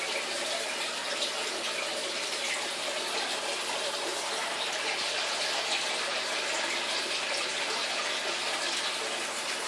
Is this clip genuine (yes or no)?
yes